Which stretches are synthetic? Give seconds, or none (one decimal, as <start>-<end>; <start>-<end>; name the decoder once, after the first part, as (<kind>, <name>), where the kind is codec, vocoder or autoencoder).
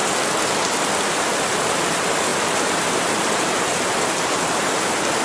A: 1.9-5.2 (vocoder, BigVGAN v2)